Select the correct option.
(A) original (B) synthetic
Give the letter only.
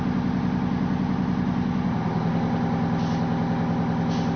A